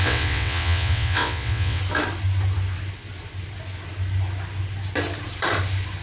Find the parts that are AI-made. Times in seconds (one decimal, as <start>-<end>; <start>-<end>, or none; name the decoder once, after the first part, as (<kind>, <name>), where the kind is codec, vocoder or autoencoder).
0.0-1.8 (vocoder, WaveNeXt)